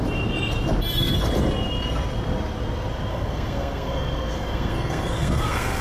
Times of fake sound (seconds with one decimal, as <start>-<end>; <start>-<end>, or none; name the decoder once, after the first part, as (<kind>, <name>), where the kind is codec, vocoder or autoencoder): 3.1-5.8 (codec, SNAC)